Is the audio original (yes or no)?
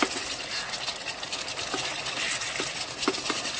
yes